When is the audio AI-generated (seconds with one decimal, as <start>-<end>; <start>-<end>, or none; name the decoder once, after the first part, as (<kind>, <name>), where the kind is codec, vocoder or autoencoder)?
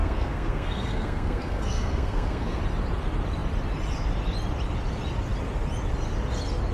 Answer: 0.0-2.6 (codec, SNAC)